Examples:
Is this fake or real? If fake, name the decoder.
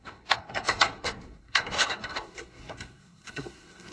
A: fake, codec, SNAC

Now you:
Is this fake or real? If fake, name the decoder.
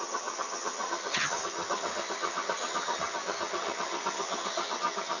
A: fake, vocoder, HiFi-GAN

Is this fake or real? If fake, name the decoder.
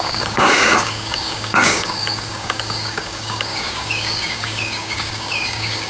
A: fake, codec, DAC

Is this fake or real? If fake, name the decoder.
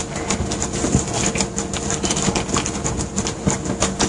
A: real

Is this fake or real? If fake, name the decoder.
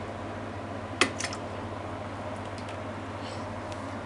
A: real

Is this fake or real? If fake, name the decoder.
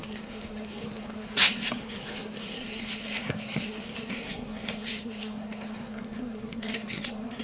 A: fake, codec, SNAC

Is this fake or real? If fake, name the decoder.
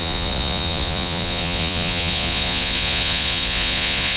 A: fake, vocoder, Vocos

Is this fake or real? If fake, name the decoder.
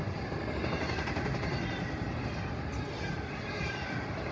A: real